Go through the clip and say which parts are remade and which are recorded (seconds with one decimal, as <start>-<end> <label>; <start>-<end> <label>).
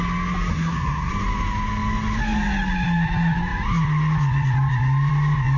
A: 0.0-0.5 recorded; 0.5-1.1 remade; 1.1-5.6 recorded